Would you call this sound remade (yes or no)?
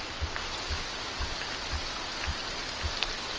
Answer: no